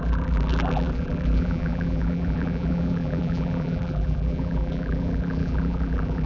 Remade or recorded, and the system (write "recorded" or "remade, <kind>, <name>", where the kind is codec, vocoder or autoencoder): remade, vocoder, BigVGAN v2